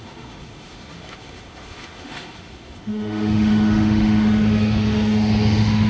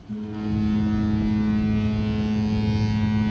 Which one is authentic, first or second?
second